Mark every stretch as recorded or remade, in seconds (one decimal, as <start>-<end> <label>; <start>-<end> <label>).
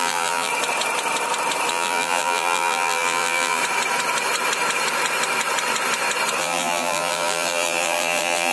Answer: 0.0-0.5 remade; 0.5-1.7 recorded; 1.7-3.6 remade; 3.6-6.4 recorded; 6.4-8.5 remade